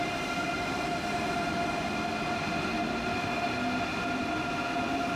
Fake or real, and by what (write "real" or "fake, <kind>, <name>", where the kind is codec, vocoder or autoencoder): real